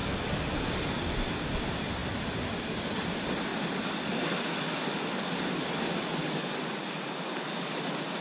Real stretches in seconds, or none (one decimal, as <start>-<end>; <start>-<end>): 0.0-0.7; 6.2-7.6